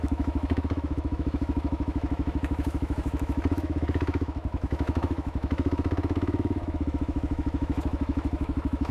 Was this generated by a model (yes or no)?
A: yes